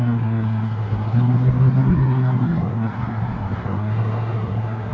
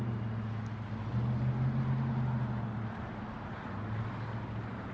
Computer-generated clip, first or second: first